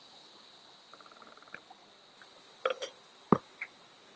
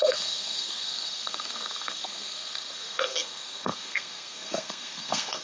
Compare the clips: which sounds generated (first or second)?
second